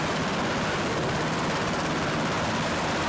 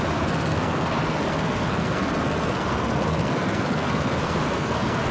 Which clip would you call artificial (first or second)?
second